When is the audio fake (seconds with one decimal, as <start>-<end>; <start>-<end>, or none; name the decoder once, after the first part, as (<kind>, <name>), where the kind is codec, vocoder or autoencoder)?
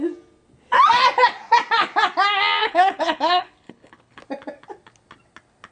2.6-4.2 (codec, HILCodec)